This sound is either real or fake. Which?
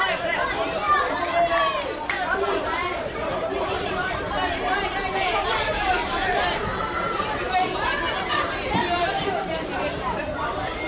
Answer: fake